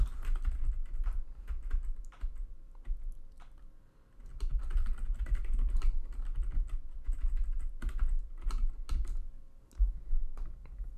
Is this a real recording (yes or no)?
yes